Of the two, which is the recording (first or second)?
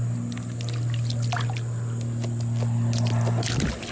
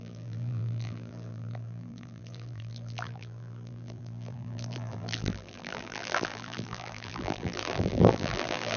first